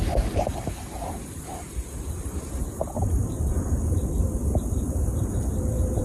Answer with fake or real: fake